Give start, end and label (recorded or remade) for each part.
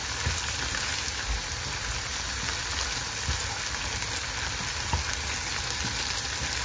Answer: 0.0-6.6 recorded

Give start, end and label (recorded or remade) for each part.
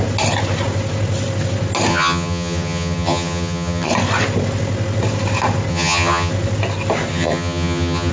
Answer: 0.0-1.9 recorded; 1.9-3.9 remade; 3.9-5.7 recorded; 5.7-6.3 remade; 6.3-7.1 recorded; 7.1-8.1 remade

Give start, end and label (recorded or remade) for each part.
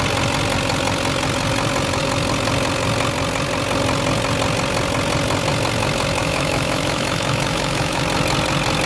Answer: 0.0-6.2 recorded; 6.2-8.0 remade; 8.0-8.9 recorded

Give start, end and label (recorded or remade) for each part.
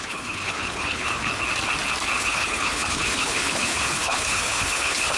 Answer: 0.0-1.3 remade; 1.3-2.2 recorded; 2.2-5.2 remade